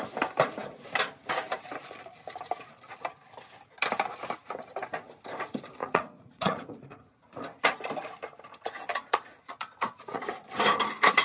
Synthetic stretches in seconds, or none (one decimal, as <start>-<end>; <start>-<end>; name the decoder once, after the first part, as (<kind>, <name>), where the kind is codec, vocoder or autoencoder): 5.8-7.4 (vocoder, Vocos); 8.9-10.2